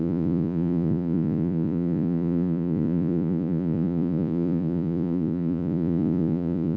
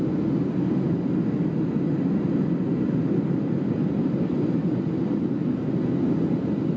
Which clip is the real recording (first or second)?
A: second